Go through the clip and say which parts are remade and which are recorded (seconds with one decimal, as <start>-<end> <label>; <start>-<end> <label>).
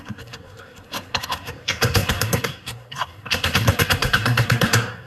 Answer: 0.0-5.1 remade